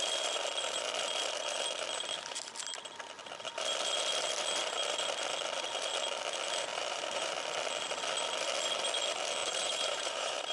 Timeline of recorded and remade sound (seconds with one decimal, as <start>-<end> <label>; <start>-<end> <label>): 0.0-6.7 recorded; 6.7-7.3 remade; 7.3-9.4 recorded; 9.4-10.5 remade